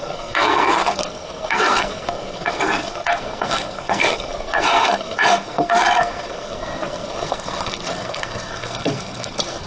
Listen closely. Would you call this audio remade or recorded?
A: remade